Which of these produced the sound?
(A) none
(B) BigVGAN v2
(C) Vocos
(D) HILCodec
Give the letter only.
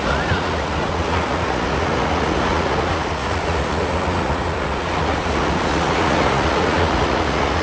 C